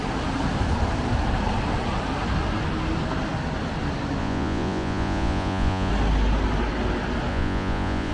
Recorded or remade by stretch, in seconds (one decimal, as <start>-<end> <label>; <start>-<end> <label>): 0.0-4.2 recorded; 4.2-5.9 remade; 5.9-7.3 recorded; 7.3-8.1 remade